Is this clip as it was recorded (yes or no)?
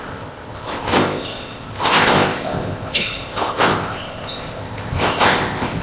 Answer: no